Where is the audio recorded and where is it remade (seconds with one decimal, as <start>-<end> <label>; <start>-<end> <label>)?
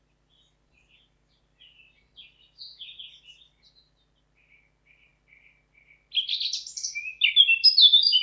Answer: 0.0-8.2 recorded